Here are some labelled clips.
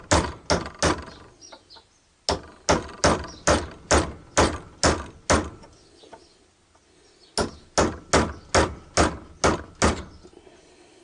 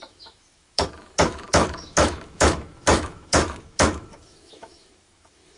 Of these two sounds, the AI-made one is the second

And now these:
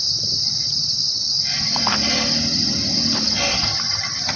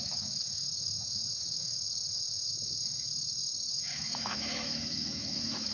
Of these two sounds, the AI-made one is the second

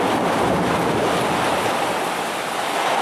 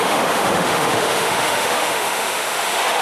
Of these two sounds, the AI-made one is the second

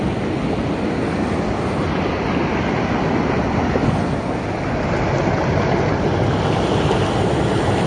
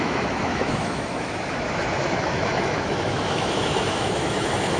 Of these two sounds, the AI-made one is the second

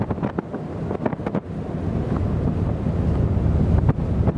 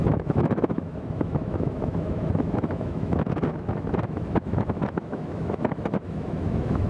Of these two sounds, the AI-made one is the second